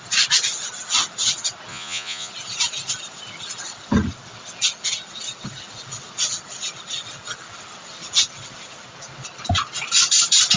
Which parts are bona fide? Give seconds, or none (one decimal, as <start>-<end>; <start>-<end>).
0.0-1.7; 2.3-10.6